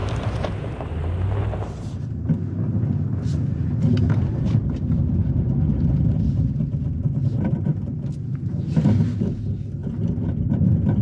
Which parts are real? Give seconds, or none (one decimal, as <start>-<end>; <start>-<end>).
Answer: 0.7-7.7; 8.5-9.8